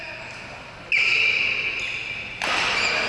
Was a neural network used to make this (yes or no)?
no